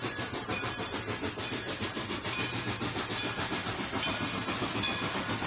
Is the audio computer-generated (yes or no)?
no